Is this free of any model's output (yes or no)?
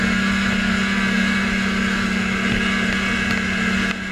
yes